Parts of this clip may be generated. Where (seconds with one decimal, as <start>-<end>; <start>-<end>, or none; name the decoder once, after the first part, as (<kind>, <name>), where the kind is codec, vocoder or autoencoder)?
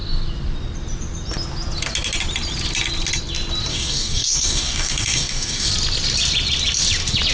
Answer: 3.7-5.7 (codec, DAC)